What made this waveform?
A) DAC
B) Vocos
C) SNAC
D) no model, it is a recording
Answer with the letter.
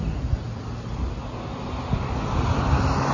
D